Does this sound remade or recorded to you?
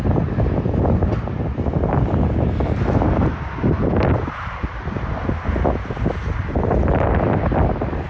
recorded